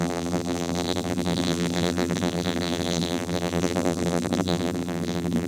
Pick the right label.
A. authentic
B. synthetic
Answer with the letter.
B